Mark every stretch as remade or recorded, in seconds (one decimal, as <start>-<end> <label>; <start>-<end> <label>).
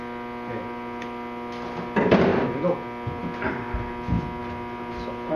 0.0-5.4 recorded